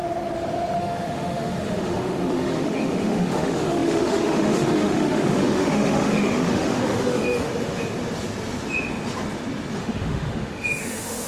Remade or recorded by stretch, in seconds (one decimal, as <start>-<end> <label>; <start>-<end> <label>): 0.0-0.8 recorded; 0.8-7.5 remade; 7.5-9.8 recorded; 9.8-11.3 remade